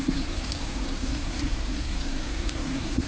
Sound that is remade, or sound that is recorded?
remade